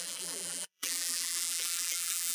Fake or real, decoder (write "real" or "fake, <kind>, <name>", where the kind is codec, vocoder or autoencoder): fake, vocoder, BigVGAN v2